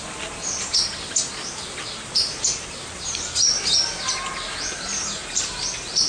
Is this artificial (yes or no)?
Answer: no